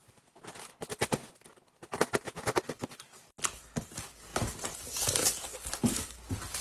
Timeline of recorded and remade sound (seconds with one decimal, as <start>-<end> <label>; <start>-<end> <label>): 0.0-6.6 recorded